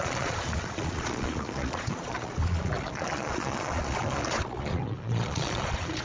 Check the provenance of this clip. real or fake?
fake